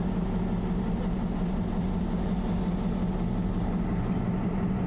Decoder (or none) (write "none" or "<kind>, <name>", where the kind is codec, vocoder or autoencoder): none